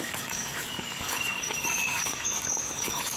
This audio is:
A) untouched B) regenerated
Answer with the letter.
B